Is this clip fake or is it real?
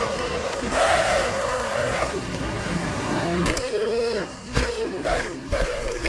fake